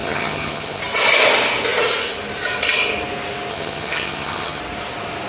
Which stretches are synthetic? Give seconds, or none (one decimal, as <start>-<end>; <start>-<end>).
0.0-0.8; 3.5-4.6